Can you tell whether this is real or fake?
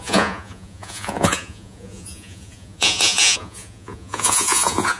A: fake